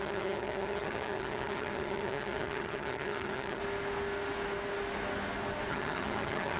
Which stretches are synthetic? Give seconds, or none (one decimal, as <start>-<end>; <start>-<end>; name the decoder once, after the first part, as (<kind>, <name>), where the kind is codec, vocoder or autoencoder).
0.0-3.6 (vocoder, HiFi-GAN); 5.7-6.6